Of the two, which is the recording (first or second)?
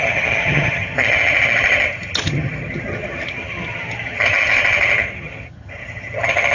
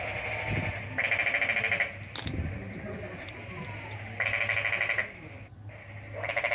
second